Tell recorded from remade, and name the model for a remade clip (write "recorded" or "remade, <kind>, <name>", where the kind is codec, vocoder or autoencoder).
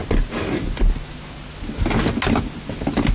recorded